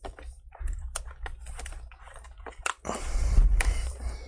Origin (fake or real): fake